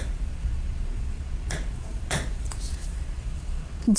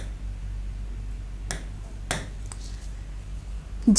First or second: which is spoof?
first